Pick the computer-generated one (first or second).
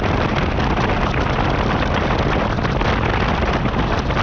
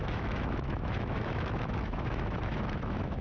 second